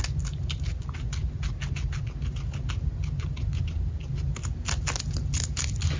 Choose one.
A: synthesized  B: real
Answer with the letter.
B